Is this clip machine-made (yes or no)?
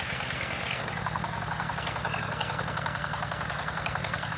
yes